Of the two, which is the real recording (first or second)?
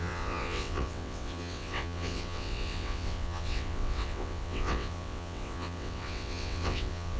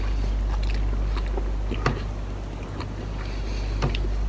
second